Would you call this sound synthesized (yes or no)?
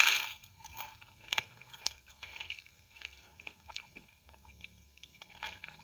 yes